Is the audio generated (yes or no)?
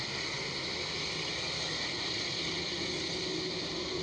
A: no